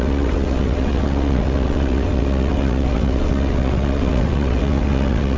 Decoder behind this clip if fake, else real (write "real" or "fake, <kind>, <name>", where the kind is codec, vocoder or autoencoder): fake, vocoder, WaveNeXt